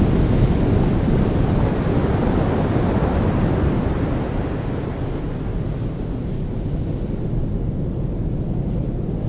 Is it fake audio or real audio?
real